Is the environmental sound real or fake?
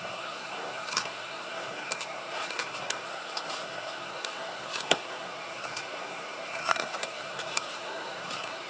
fake